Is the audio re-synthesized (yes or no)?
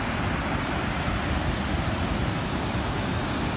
no